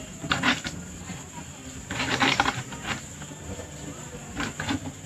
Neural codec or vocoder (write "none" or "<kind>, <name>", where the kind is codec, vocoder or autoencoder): vocoder, BigVGAN v2